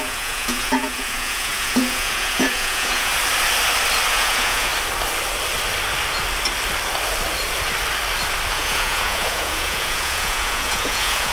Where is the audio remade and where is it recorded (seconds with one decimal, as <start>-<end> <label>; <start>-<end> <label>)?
0.0-3.1 remade; 3.1-4.1 recorded; 4.1-4.7 remade; 4.7-8.5 recorded; 8.5-11.3 remade